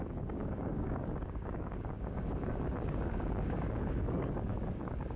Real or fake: fake